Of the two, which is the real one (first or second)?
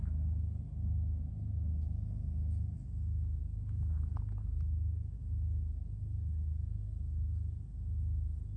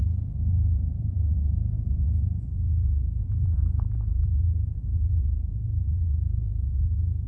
first